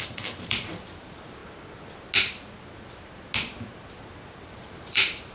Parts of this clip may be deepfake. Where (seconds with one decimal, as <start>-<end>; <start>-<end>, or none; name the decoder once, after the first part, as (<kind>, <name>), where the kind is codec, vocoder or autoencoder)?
0.0-1.4 (vocoder, BigVGAN v2); 4.5-5.3